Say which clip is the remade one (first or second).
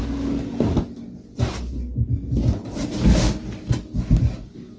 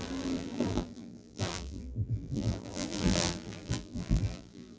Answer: second